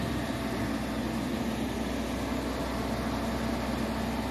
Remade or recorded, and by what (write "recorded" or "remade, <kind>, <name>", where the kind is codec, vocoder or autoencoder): recorded